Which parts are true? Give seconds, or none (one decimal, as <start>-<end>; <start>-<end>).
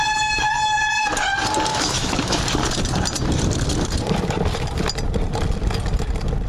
1.1-1.7; 2.4-6.5